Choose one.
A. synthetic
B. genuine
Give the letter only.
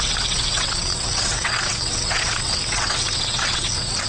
A